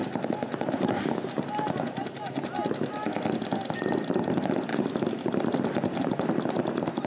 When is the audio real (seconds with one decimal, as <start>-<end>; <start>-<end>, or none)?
0.0-7.1